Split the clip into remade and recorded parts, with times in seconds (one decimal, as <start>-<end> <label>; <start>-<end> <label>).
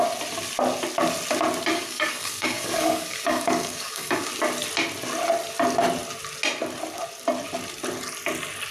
0.0-1.7 recorded; 1.7-4.3 remade; 4.3-8.7 recorded